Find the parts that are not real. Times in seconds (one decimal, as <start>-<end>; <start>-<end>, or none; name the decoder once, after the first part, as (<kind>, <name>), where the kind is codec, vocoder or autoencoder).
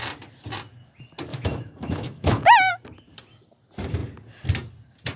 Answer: 1.3-2.7 (autoencoder, DAC-VAE)